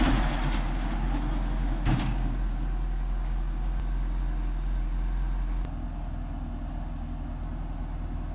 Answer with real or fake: real